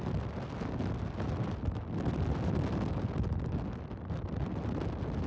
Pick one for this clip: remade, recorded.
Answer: recorded